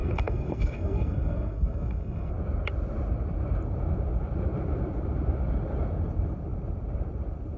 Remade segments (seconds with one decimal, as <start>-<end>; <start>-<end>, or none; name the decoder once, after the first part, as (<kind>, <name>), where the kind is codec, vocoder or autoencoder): 0.0-2.3 (codec, SNAC)